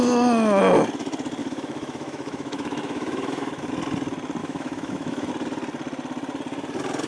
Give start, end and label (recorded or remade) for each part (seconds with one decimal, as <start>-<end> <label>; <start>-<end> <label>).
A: 0.0-1.4 recorded; 1.4-3.7 remade; 3.7-4.4 recorded; 4.4-5.3 remade; 5.3-7.1 recorded

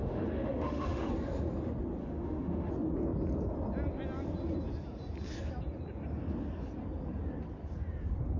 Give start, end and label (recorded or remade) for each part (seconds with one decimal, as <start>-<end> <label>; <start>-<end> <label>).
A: 0.0-1.1 remade; 1.1-2.0 recorded; 2.0-2.7 remade; 2.7-8.4 recorded

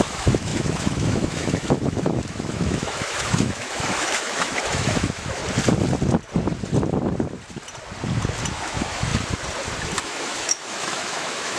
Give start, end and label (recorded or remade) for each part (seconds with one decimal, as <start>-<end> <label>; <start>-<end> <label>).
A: 0.0-5.4 remade; 5.4-8.5 recorded; 8.5-9.1 remade; 9.1-10.0 recorded; 10.0-11.6 remade

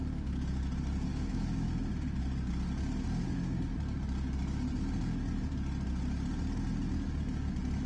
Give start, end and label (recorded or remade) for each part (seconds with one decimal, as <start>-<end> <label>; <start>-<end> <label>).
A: 0.0-1.1 recorded; 1.1-1.9 remade; 1.9-7.9 recorded

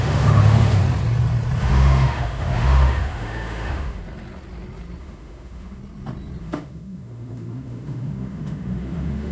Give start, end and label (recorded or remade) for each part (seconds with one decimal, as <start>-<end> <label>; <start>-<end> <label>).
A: 0.0-0.8 remade; 0.8-1.6 recorded; 1.6-4.0 remade; 4.0-5.0 recorded; 5.0-5.8 remade; 5.8-6.4 recorded; 6.4-9.3 remade

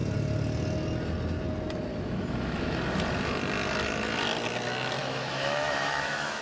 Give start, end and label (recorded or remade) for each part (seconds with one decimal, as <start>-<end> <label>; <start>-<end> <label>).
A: 0.0-1.9 recorded; 1.9-2.8 remade; 2.8-5.0 recorded; 5.0-6.4 remade